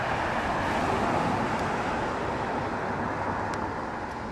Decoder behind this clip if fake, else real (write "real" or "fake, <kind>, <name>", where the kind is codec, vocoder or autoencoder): real